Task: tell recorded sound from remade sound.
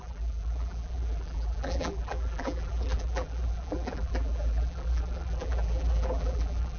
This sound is remade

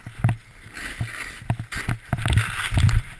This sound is recorded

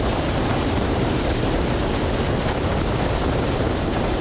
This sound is remade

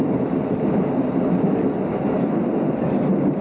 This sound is recorded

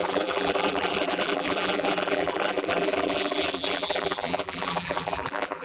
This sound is remade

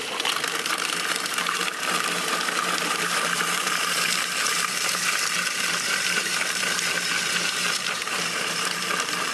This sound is remade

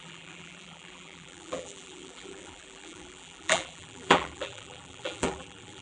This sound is remade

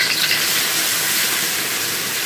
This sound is remade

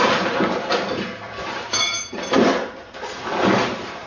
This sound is remade